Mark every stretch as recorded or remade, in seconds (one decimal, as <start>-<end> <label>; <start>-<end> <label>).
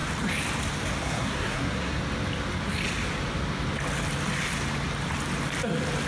0.0-1.0 recorded; 1.0-2.0 remade; 2.0-6.1 recorded